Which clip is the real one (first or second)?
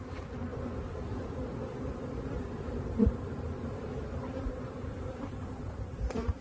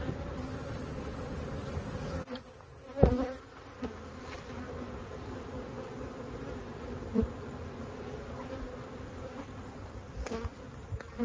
second